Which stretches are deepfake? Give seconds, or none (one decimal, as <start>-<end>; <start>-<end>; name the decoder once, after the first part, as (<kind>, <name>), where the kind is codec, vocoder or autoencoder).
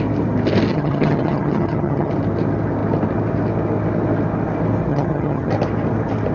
0.7-2.1 (vocoder, HiFi-GAN); 4.9-5.5